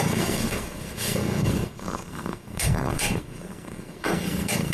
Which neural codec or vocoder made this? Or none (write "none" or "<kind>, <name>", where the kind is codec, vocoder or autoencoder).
codec, SNAC